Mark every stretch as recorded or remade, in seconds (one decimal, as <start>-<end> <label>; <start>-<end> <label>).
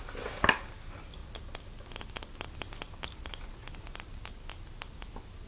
0.0-5.5 recorded